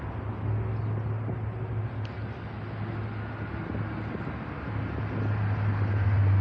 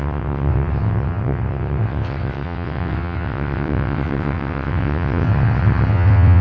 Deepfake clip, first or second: second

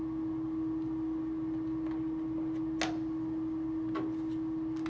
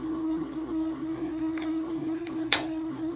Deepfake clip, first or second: second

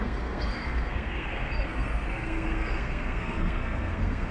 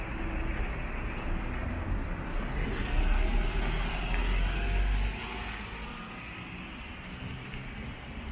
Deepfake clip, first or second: first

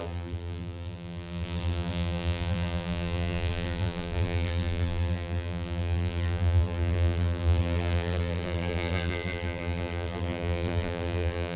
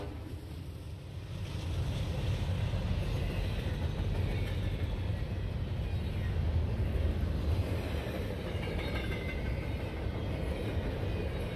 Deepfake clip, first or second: first